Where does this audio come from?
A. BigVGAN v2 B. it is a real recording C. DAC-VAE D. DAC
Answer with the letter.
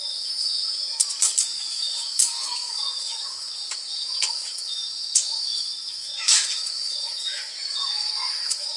C